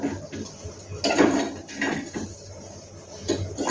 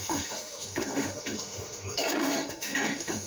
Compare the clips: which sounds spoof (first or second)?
second